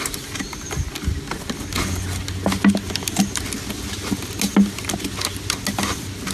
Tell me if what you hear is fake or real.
real